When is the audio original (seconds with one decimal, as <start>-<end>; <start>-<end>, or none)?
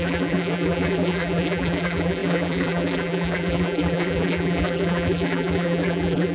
none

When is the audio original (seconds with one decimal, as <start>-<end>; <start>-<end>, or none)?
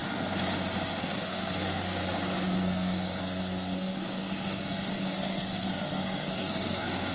0.0-1.0; 2.0-2.6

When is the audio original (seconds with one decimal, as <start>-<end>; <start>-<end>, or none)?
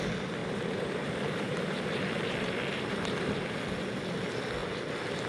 0.0-0.4; 3.6-5.3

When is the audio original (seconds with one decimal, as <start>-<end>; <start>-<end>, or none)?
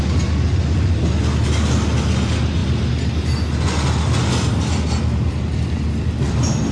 0.0-6.7